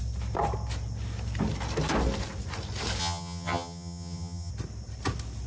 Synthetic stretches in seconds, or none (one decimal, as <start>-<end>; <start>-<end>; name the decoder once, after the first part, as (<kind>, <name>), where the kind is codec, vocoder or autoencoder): 3.0-4.5 (vocoder, HiFi-GAN)